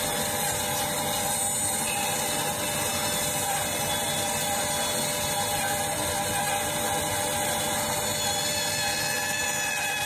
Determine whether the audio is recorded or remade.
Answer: recorded